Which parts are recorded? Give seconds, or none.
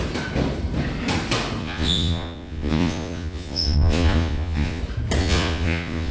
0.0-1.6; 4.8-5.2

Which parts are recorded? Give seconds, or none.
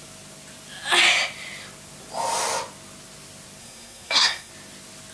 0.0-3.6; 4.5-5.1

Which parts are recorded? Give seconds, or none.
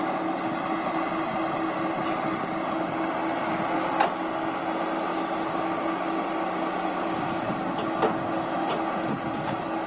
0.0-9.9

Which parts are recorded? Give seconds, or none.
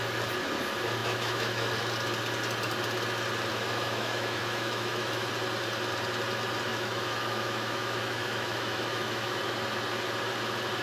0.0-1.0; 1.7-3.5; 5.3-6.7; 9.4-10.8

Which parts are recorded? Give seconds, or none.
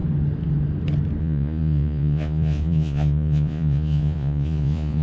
0.0-1.2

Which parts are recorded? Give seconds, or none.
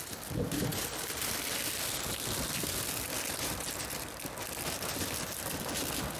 0.0-6.2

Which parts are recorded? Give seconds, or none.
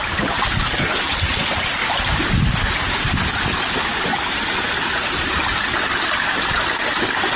0.0-3.9; 5.6-7.4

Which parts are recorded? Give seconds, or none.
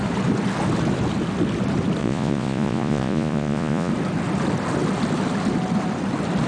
0.0-2.0; 3.9-6.5